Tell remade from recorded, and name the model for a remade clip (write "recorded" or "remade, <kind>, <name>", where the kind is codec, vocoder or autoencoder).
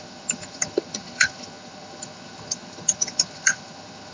remade, vocoder, HiFi-GAN